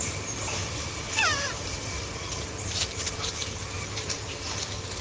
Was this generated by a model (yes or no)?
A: yes